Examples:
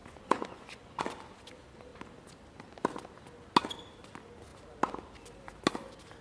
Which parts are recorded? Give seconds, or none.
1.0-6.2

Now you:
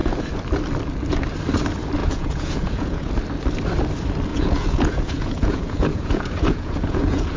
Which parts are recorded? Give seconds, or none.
0.0-2.0; 3.1-4.3

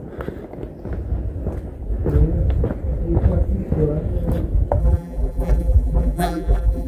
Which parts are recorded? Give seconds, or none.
0.0-4.8

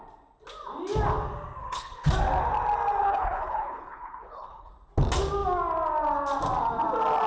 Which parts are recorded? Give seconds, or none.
0.0-1.6; 2.1-3.0; 4.7-7.3